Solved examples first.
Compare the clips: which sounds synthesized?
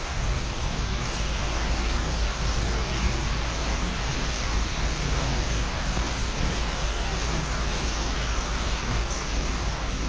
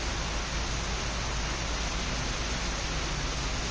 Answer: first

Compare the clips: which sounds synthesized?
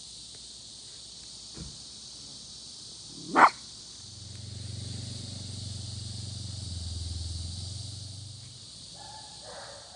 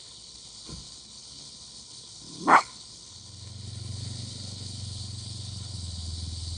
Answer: second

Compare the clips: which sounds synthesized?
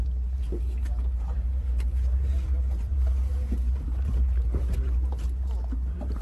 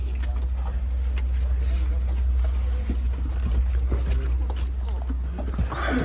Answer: first